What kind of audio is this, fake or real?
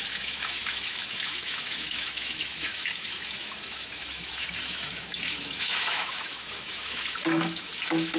fake